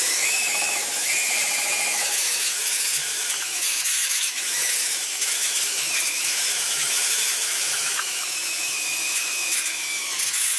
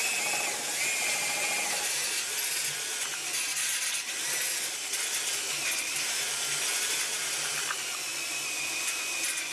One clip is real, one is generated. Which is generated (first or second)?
first